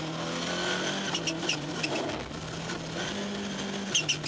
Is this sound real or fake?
real